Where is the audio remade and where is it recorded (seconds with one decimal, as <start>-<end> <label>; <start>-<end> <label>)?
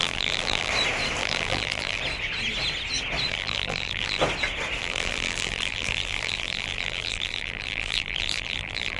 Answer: 0.0-0.7 remade; 0.7-1.2 recorded; 1.2-2.0 remade; 2.0-3.3 recorded; 3.3-4.2 remade; 4.2-4.8 recorded; 4.8-9.0 remade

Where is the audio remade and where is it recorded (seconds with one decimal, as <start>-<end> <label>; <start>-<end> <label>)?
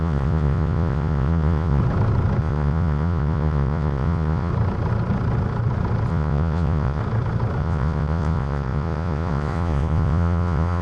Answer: 0.0-1.8 remade; 1.8-2.4 recorded; 2.4-4.5 remade; 4.5-6.1 recorded; 6.1-7.0 remade; 7.0-7.6 recorded; 7.6-10.8 remade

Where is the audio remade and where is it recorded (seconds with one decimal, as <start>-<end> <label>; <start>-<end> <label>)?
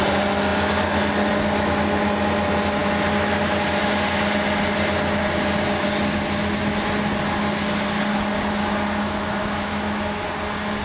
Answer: 0.0-9.4 recorded; 9.4-10.3 remade; 10.3-10.8 recorded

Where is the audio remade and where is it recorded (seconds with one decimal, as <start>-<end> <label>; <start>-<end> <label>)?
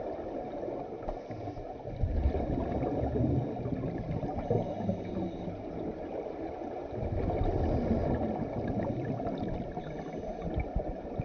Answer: 0.0-11.2 recorded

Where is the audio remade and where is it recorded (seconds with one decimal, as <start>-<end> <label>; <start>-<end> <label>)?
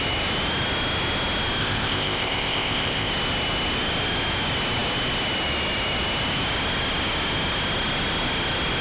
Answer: 0.0-1.6 recorded; 1.6-3.1 remade; 3.1-8.8 recorded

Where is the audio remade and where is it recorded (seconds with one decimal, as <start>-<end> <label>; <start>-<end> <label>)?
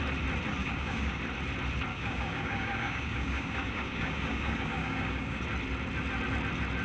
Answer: 0.0-0.6 recorded; 0.6-1.2 remade; 1.2-1.9 recorded; 1.9-5.4 remade; 5.4-6.8 recorded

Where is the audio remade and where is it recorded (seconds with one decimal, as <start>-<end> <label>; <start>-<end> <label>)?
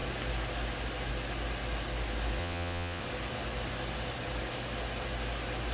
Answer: 0.0-2.4 recorded; 2.4-3.0 remade; 3.0-5.7 recorded